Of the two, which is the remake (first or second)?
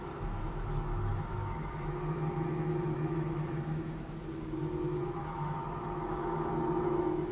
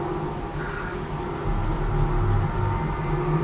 first